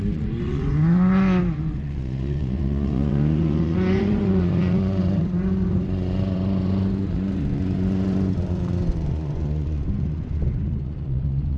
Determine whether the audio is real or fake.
fake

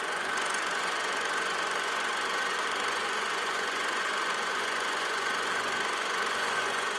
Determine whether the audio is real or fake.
fake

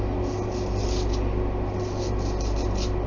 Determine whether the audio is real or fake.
real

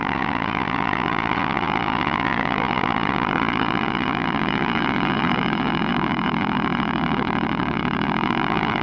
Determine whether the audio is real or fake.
fake